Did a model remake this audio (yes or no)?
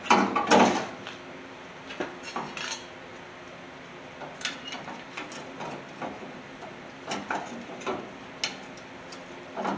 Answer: no